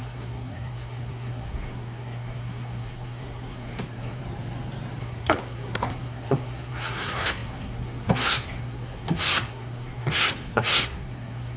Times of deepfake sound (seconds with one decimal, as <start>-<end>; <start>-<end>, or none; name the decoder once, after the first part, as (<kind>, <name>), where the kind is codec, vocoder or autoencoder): 0.0-4.2 (codec, SNAC); 5.0-11.6